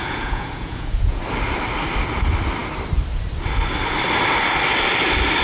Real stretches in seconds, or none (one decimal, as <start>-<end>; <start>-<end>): 1.2-5.4